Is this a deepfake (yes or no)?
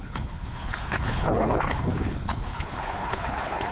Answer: yes